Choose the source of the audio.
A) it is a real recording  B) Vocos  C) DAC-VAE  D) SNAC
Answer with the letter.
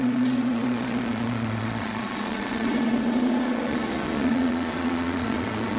B